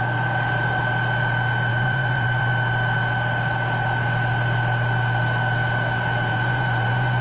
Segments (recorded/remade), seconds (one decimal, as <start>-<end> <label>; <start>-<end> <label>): 0.0-1.7 recorded; 1.7-2.5 remade; 2.5-6.3 recorded; 6.3-7.2 remade

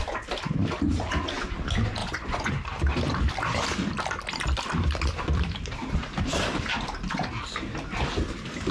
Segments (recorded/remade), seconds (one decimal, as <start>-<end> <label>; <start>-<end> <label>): 0.0-2.0 recorded; 2.0-2.5 remade; 2.5-8.7 recorded

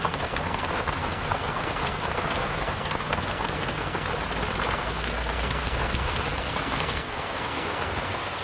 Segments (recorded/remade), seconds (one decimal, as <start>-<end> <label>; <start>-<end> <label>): 0.0-4.1 remade; 4.1-4.7 recorded; 4.7-8.4 remade

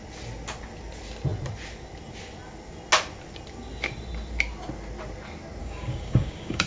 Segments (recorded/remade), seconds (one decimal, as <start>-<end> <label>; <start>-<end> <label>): 0.0-5.6 recorded; 5.6-6.7 remade